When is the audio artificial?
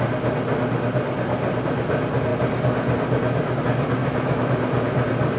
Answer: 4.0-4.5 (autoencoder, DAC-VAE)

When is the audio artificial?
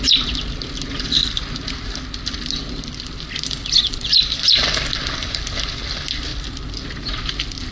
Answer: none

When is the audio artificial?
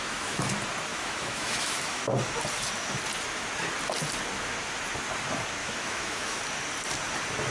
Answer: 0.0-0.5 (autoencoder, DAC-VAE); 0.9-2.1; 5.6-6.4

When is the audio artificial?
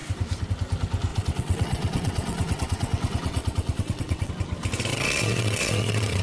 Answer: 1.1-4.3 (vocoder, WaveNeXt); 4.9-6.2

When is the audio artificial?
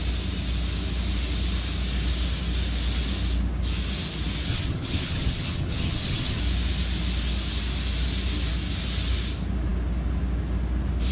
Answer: 4.5-6.4 (vocoder, HiFi-GAN)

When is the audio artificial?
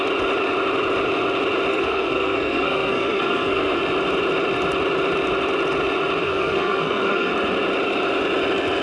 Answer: 1.7-3.8 (codec, SNAC); 6.2-7.3